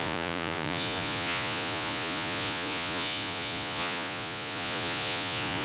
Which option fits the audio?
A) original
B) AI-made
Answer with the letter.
B